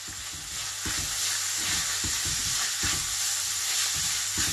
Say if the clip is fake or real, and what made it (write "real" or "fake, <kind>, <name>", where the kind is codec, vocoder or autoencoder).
real